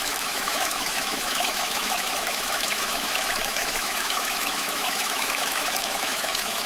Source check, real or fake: fake